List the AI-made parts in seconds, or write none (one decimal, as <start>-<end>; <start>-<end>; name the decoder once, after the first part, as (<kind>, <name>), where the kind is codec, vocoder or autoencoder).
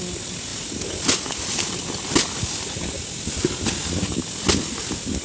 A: none